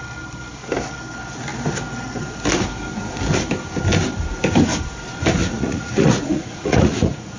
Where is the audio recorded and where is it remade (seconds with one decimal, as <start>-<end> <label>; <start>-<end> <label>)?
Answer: 0.0-5.4 recorded; 5.4-7.4 remade